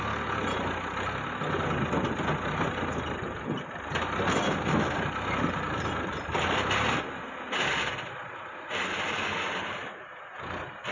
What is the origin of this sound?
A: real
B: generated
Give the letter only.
A